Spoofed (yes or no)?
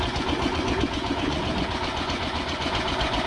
yes